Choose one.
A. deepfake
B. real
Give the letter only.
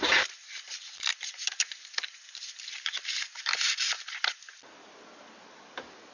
B